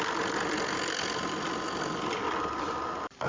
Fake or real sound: real